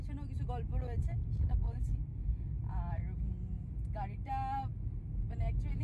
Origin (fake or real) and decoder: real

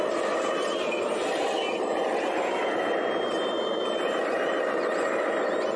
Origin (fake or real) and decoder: fake, vocoder, BigVGAN v2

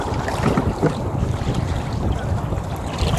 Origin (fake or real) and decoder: real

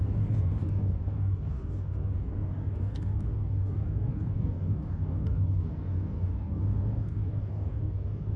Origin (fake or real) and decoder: fake, codec, DAC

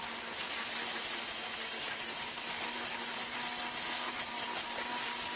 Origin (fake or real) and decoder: real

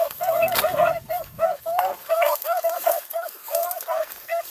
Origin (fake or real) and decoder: fake, codec, SNAC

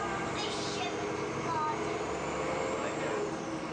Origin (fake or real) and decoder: real